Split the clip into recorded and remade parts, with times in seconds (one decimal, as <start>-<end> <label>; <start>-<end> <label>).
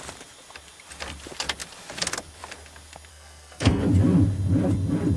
0.0-3.1 recorded; 3.1-3.8 remade; 3.8-5.2 recorded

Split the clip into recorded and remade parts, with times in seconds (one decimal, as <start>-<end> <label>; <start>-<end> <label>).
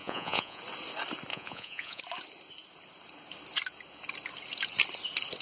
0.0-0.6 remade; 0.6-1.3 recorded; 1.3-2.0 remade; 2.0-5.4 recorded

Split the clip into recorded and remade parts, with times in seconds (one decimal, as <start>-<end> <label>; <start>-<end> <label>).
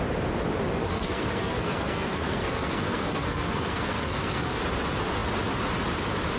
0.0-0.8 recorded; 0.8-4.6 remade; 4.6-6.4 recorded